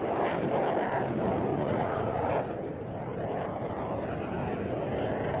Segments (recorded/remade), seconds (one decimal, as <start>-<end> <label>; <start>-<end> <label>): 0.0-1.5 recorded; 1.5-2.3 remade; 2.3-5.4 recorded